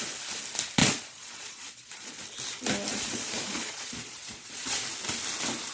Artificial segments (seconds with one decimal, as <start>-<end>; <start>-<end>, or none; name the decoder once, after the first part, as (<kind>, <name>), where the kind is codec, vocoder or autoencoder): 0.8-2.2 (vocoder, Vocos); 2.9-4.8